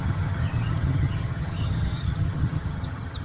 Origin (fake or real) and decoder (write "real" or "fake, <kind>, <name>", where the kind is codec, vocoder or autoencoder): fake, vocoder, HiFi-GAN